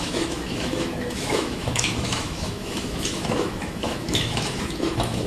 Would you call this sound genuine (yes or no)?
no